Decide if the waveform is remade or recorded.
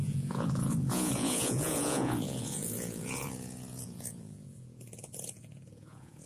remade